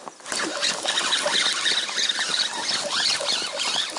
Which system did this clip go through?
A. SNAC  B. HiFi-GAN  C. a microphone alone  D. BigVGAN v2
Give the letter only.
C